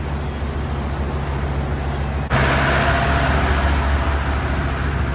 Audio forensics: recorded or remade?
recorded